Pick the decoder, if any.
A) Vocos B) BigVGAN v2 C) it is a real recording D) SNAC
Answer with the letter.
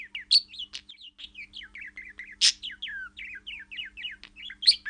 C